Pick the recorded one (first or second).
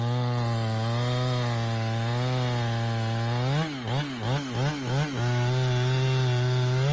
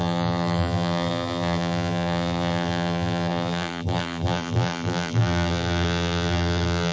first